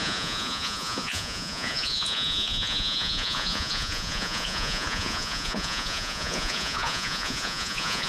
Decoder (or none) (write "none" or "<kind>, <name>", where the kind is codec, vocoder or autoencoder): vocoder, Vocos